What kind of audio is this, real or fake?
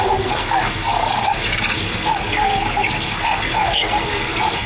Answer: fake